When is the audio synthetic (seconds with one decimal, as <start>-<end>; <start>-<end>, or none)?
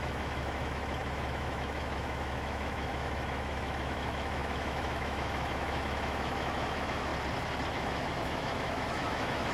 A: 0.0-7.1; 7.7-9.5